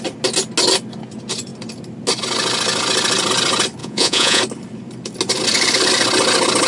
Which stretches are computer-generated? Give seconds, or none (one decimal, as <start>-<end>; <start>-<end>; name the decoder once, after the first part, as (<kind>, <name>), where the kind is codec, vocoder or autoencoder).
3.8-4.4 (vocoder, Vocos)